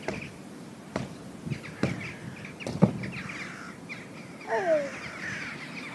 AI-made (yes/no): no